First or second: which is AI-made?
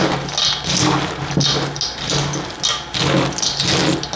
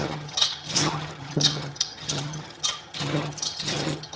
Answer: second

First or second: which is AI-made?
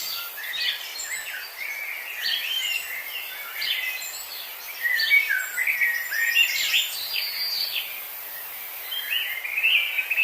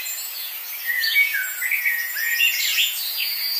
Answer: second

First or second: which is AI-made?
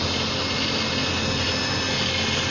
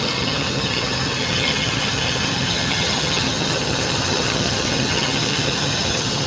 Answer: second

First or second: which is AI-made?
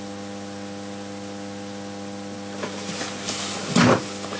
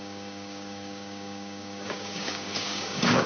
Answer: second